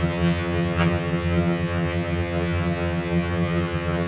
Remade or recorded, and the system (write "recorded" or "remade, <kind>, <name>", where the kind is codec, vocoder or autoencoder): remade, vocoder, HiFi-GAN